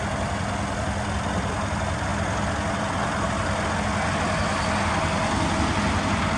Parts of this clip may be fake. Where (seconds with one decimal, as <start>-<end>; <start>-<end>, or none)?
none